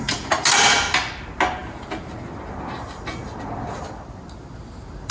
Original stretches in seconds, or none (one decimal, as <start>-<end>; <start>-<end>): 0.0-5.1